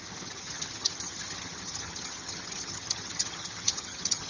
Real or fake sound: fake